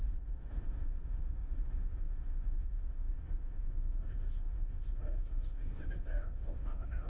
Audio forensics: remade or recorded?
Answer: remade